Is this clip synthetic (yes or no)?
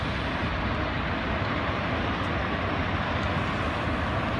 no